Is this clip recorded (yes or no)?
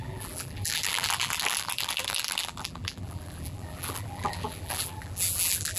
no